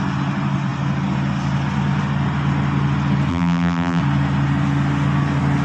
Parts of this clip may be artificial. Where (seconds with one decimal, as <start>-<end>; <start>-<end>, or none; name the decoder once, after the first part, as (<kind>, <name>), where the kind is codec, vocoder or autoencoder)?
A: 3.3-4.0 (vocoder, BigVGAN v2)

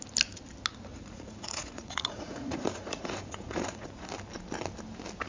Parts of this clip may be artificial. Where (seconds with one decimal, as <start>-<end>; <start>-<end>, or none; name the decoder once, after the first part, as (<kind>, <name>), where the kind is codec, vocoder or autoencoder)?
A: 0.9-4.1 (vocoder, Vocos)